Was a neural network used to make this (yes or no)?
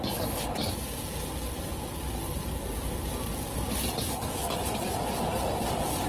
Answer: no